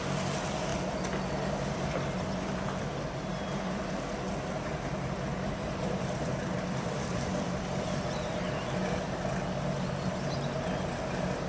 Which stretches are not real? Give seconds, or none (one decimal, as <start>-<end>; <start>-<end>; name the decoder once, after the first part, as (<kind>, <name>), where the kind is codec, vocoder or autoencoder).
5.3-7.6 (vocoder, BigVGAN v2); 8.8-9.9